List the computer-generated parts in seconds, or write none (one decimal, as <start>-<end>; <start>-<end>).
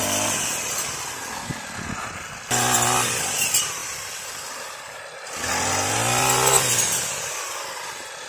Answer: none